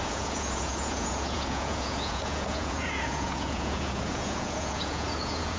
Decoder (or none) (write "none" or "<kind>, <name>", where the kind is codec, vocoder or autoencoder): vocoder, Vocos